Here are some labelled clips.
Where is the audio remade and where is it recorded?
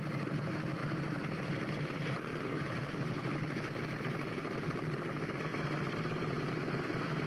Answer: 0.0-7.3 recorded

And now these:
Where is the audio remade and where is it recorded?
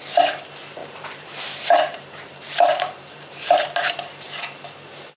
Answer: 0.0-0.8 recorded; 0.8-3.9 remade; 3.9-5.2 recorded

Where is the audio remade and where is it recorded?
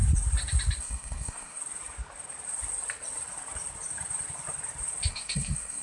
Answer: 0.0-0.8 recorded; 0.8-1.6 remade; 1.6-5.1 recorded; 5.1-5.8 remade